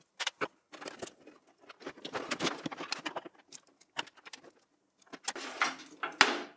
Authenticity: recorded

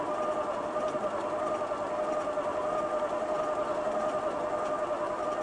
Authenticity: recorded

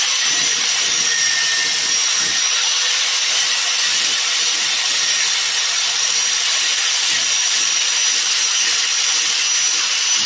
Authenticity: recorded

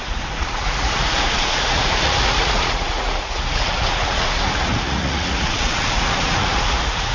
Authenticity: remade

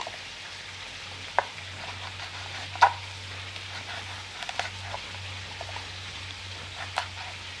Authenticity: recorded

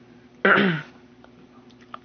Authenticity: recorded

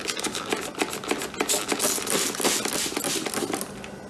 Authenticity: recorded